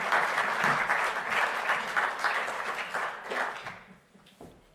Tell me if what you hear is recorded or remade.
recorded